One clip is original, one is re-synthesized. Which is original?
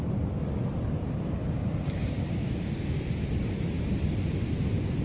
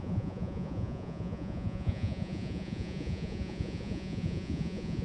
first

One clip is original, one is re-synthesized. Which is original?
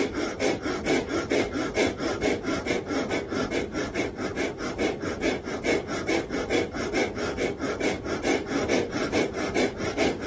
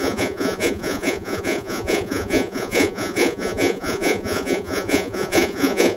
first